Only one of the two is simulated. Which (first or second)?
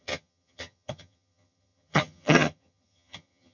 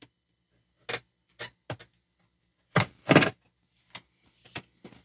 first